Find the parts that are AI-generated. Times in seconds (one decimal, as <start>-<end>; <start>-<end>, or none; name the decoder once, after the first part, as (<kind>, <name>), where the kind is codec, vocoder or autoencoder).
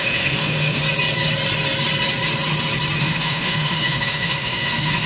0.0-0.8 (autoencoder, DAC-VAE); 3.0-5.1